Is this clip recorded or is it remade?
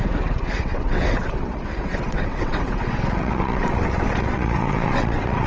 remade